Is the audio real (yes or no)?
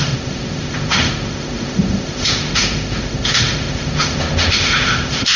no